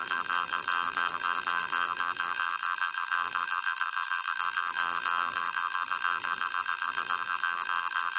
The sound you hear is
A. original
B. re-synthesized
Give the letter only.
B